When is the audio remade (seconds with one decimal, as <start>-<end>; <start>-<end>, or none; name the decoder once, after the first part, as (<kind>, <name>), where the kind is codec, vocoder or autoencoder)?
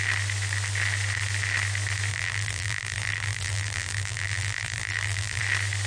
2.1-5.4 (vocoder, BigVGAN v2)